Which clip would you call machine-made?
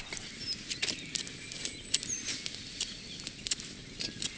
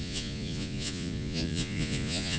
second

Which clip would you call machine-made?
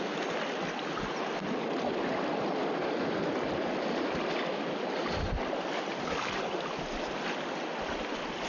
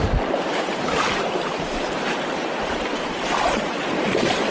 second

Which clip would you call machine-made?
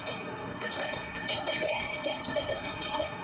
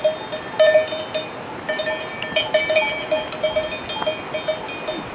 first